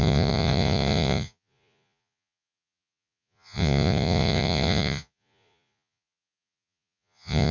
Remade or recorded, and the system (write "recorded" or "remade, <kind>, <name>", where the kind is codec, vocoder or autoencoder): remade, vocoder, Vocos